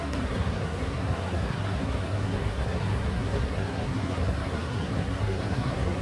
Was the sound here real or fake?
fake